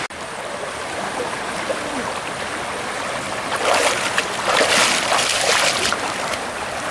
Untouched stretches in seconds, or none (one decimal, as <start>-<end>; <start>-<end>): 0.0-6.9

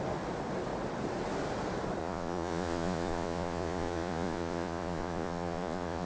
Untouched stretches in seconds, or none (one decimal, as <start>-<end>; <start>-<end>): 0.0-2.0

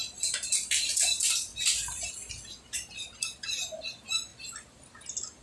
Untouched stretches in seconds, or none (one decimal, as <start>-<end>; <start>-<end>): 0.0-5.4

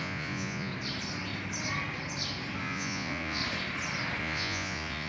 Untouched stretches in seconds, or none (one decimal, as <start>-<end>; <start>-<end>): 0.7-2.6; 3.4-4.2

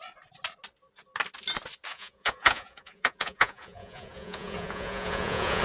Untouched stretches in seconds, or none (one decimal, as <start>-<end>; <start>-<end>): 0.0-1.9

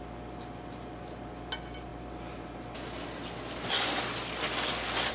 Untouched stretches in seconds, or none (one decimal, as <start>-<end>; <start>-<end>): 0.0-5.1

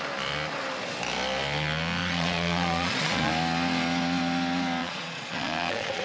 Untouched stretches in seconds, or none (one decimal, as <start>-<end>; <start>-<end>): 0.0-2.0; 3.3-4.8